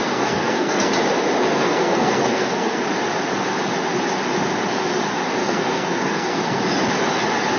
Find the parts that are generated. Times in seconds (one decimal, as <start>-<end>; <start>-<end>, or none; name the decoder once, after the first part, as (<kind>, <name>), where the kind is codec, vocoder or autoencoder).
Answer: 0.0-0.9 (codec, SNAC); 1.5-2.9; 5.4-6.6